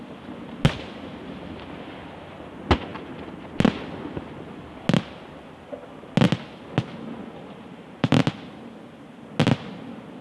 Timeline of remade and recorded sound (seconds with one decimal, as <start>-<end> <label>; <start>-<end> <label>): 0.0-7.2 recorded; 7.2-8.2 remade; 8.2-10.2 recorded